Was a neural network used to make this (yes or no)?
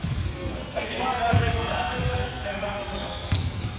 yes